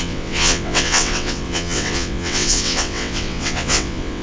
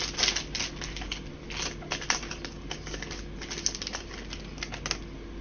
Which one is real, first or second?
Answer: second